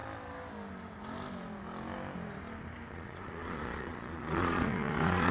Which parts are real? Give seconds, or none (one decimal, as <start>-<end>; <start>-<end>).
0.0-2.9